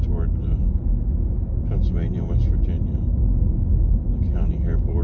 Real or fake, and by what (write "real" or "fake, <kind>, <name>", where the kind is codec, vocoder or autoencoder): real